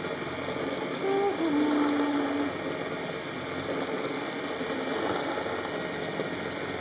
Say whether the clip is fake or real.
real